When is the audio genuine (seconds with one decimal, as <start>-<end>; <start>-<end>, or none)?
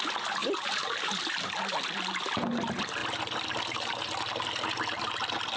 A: 0.0-5.6